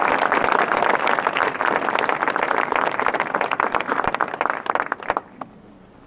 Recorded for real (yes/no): yes